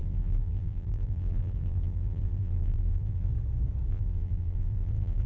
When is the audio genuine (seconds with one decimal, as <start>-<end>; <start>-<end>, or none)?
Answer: 3.3-3.9